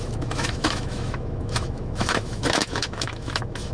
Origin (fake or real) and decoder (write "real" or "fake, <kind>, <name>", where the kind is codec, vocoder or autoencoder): fake, autoencoder, DAC-VAE